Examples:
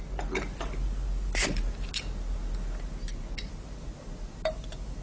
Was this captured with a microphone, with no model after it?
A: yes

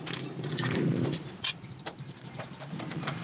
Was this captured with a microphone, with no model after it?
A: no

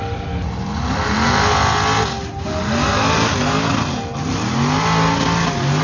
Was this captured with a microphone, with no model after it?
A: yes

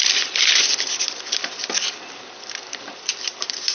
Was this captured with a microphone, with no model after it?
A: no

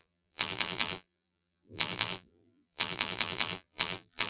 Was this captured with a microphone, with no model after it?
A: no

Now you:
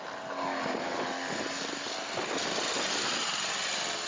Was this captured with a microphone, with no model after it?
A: yes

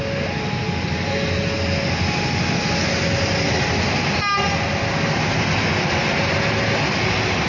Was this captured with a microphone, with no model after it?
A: yes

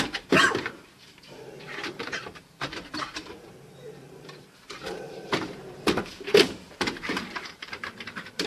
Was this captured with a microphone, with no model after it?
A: no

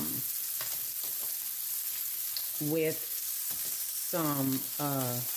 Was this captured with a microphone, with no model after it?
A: yes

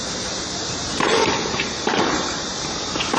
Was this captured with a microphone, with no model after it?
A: yes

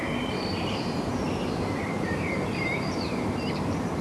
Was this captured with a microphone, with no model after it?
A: no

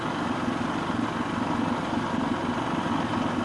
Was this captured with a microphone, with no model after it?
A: yes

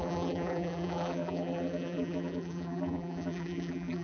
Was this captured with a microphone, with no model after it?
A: no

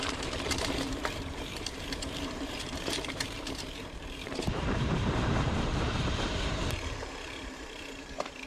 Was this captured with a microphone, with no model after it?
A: no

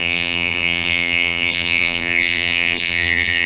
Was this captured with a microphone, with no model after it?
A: no